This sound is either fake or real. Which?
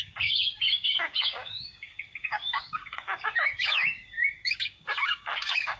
fake